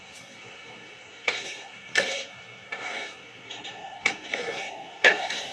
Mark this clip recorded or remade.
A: remade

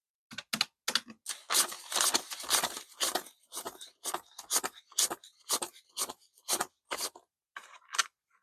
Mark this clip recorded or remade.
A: recorded